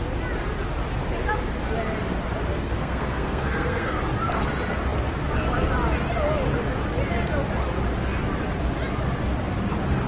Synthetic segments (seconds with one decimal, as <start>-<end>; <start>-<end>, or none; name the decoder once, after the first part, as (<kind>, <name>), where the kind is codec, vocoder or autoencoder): 2.5-4.0 (codec, SNAC)